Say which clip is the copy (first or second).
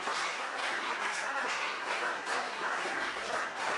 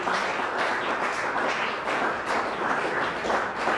first